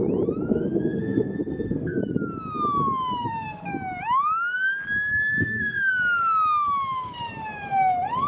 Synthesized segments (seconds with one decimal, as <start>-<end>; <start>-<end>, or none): 0.5-2.0; 3.2-3.7; 5.4-5.9